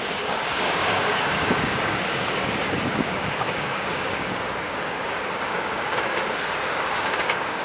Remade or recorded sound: remade